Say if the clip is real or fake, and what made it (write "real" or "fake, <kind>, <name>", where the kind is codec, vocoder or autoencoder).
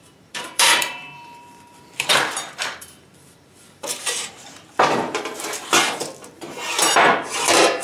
fake, vocoder, BigVGAN v2